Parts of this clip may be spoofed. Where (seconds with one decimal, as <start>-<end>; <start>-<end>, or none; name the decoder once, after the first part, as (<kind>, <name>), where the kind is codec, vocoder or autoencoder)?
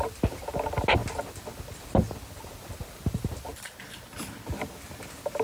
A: none